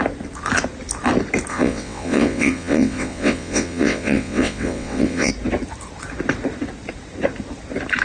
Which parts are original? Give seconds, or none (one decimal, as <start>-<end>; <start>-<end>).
0.0-1.5; 5.3-8.0